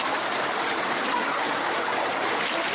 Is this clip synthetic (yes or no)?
no